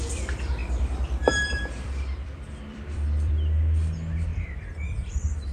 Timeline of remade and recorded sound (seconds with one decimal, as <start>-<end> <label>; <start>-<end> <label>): 0.0-0.6 recorded; 0.6-3.3 remade; 3.3-5.5 recorded